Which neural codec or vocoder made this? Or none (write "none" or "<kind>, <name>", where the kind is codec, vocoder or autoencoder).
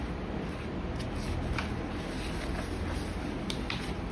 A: none